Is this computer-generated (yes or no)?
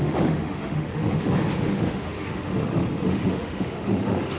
yes